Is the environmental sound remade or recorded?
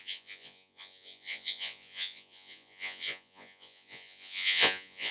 remade